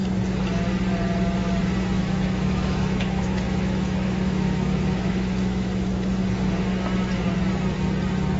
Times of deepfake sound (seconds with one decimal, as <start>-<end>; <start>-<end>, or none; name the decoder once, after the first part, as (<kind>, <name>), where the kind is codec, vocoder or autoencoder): 2.0-6.2 (autoencoder, DAC-VAE)